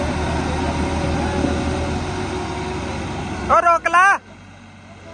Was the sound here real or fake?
real